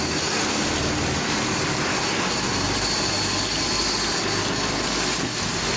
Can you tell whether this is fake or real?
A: real